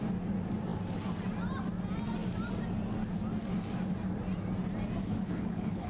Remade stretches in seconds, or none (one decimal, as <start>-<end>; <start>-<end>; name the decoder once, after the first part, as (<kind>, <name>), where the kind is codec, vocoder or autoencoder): 5.0-5.9 (codec, HILCodec)